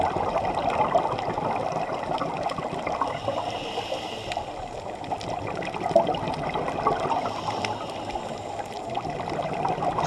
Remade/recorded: recorded